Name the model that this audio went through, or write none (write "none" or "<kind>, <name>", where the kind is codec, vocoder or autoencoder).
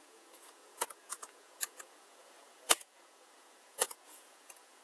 vocoder, Vocos